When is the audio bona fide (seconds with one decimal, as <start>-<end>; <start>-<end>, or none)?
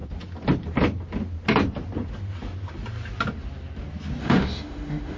0.0-4.2